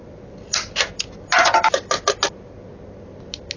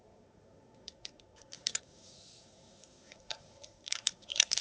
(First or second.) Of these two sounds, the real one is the first